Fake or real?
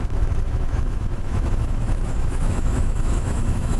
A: fake